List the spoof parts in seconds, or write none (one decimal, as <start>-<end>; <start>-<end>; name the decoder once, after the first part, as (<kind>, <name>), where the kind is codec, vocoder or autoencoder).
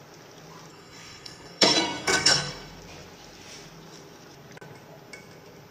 0.7-2.5 (codec, SNAC)